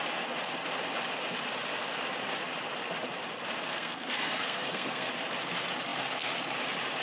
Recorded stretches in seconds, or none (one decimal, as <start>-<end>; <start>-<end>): 0.0-3.7; 5.1-7.0